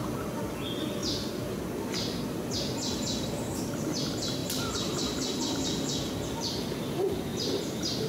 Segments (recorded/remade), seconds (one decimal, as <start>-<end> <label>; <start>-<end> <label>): 0.0-8.1 recorded